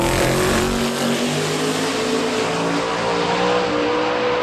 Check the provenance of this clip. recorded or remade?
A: recorded